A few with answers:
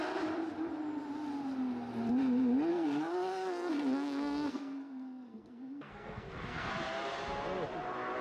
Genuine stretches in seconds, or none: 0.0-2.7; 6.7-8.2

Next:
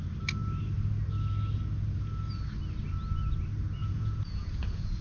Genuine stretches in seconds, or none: 0.0-3.8